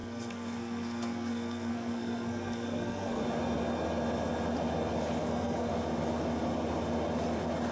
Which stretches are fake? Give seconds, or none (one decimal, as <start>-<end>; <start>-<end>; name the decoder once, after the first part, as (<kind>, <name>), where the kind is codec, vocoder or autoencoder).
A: 0.0-3.2 (codec, SNAC); 5.2-5.7